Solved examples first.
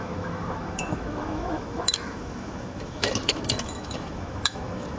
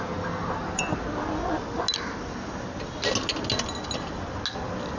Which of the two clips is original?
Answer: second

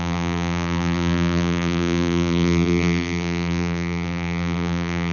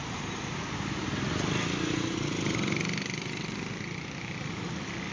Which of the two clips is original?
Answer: second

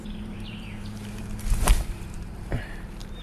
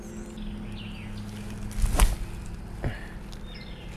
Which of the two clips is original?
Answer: second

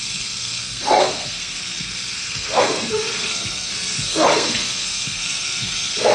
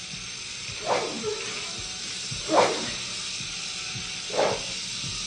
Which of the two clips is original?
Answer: second